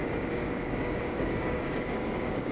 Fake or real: fake